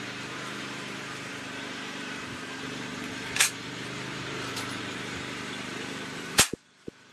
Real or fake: fake